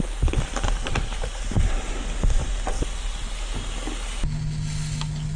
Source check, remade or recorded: recorded